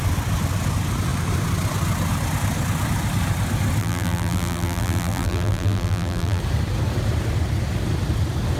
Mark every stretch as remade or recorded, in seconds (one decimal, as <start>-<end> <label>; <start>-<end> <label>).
0.0-3.8 recorded; 3.8-6.4 remade; 6.4-8.6 recorded